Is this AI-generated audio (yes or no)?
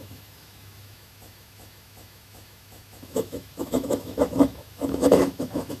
yes